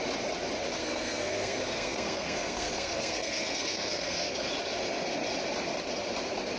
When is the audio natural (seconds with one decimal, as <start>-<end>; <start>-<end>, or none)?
0.0-0.8; 4.5-6.6